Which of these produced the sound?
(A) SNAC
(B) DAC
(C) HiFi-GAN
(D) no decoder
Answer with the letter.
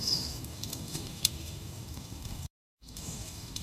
B